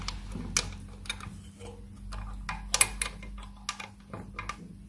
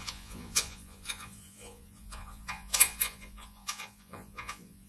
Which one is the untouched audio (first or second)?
first